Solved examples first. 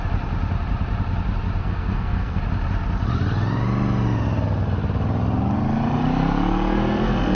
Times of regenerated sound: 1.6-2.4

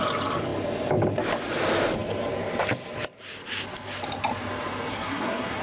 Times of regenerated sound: 4.9-5.6